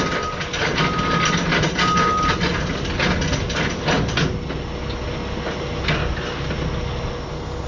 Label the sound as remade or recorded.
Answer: recorded